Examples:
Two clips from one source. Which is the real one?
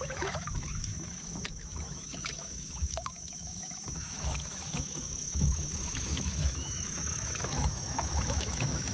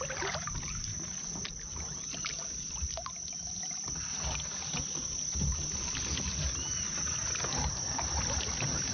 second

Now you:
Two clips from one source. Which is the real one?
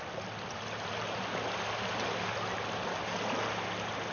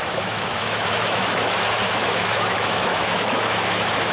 first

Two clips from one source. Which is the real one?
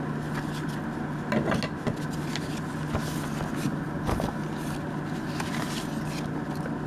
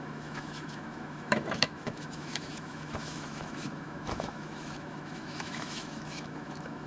first